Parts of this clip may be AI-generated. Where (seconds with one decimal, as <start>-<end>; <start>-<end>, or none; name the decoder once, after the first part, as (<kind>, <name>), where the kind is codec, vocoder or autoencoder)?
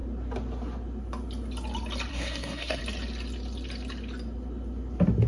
2.1-2.8 (codec, SNAC)